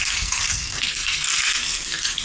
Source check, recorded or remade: remade